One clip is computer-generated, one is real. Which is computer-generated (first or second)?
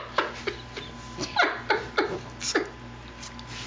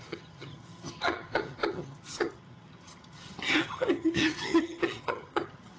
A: second